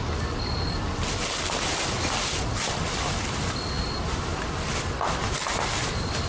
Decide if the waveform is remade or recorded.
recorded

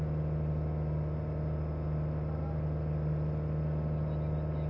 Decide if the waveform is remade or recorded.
recorded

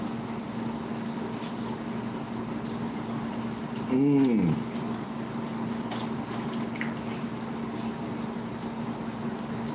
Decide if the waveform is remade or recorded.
recorded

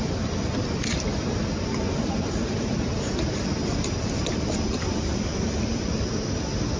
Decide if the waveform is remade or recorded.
remade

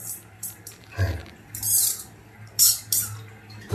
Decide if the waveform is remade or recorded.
recorded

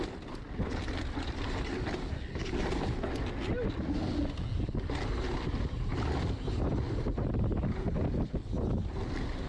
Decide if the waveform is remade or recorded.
recorded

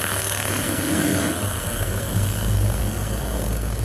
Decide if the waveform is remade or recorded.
remade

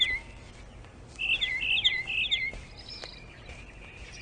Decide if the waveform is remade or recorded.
recorded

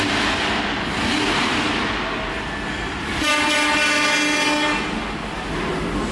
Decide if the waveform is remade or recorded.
recorded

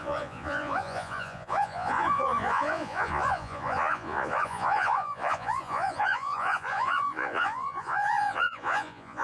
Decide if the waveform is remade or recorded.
remade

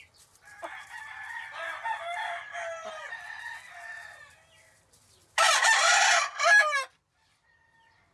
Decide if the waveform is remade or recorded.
recorded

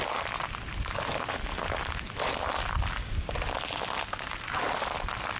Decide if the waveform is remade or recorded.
recorded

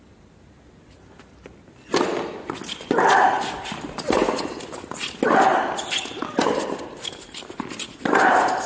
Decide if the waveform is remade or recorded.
recorded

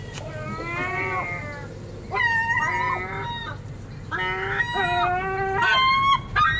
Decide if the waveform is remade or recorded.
recorded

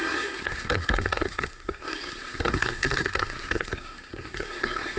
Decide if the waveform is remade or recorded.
remade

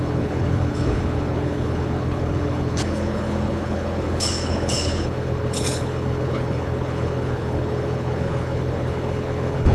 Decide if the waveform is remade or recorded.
remade